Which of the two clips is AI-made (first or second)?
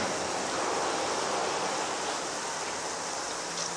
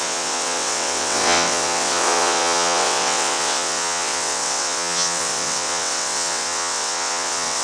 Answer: second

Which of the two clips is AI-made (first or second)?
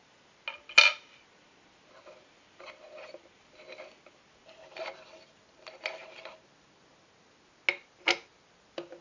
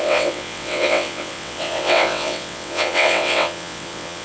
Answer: second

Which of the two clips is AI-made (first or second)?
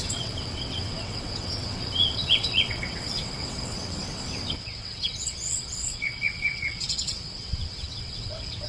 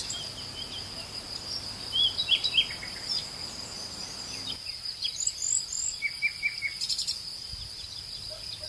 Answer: first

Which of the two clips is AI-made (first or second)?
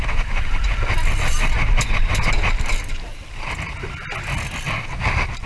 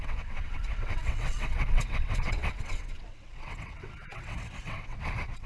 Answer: second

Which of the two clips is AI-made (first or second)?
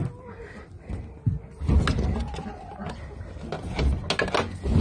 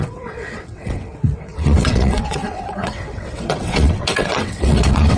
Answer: second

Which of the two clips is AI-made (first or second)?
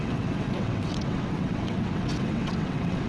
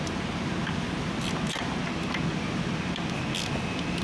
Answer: first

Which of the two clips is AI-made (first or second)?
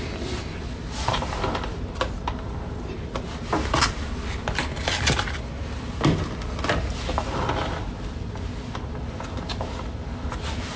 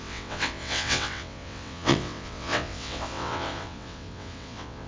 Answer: second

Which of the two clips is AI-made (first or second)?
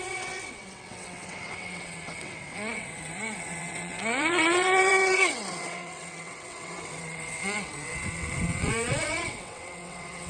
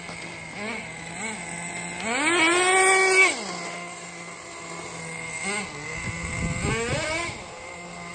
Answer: first